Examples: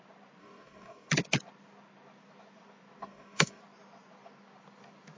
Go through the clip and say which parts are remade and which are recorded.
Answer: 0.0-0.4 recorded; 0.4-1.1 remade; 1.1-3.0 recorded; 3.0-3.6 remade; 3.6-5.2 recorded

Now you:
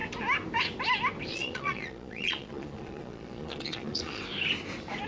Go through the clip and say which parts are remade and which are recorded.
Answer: 0.0-1.3 recorded; 1.3-4.2 remade; 4.2-5.1 recorded